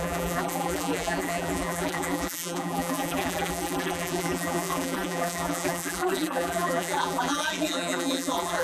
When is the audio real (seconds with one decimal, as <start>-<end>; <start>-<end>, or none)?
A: none